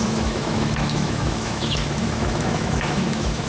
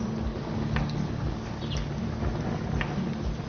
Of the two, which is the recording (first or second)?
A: second